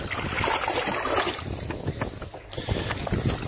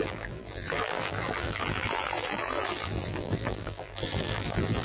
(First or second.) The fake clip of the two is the second